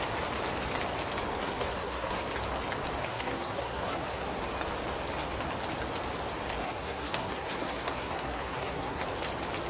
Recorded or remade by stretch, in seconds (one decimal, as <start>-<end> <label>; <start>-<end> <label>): 0.0-1.4 recorded; 1.4-2.2 remade; 2.2-3.0 recorded; 3.0-4.4 remade; 4.4-6.6 recorded; 6.6-9.0 remade; 9.0-9.7 recorded